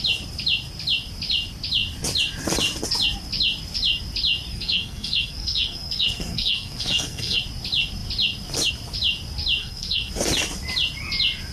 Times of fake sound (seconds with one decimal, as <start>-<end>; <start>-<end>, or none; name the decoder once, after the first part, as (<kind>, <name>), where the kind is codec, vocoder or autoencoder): 4.5-7.4 (codec, SNAC); 9.6-10.1